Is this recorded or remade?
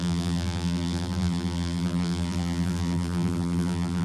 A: remade